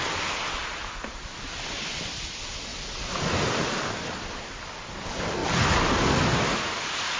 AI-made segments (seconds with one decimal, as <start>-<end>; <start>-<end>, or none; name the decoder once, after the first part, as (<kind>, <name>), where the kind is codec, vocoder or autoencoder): none